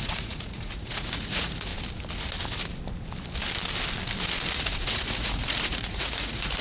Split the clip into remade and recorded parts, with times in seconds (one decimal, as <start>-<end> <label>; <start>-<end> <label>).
0.0-1.7 remade; 1.7-4.5 recorded; 4.5-6.6 remade